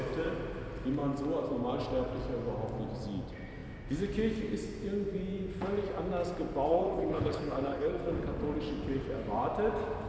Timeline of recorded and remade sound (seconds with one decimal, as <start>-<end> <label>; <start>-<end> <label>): 0.0-6.7 recorded; 6.7-8.0 remade; 8.0-10.1 recorded

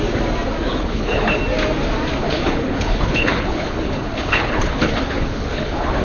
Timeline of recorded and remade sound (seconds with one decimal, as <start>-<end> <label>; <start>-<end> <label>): 0.0-0.7 recorded; 0.7-1.4 remade; 1.4-2.2 recorded; 2.2-6.0 remade